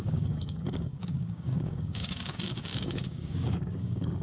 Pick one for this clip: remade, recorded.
remade